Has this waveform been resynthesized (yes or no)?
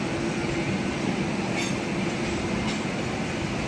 no